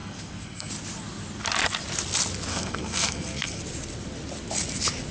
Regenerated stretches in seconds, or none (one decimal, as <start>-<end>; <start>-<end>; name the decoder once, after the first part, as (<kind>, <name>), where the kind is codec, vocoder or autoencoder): 0.0-0.7 (codec, SNAC); 2.5-3.6